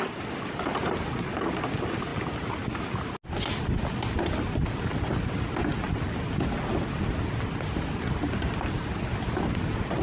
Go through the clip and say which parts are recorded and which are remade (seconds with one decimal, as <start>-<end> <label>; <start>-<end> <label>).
0.0-10.0 recorded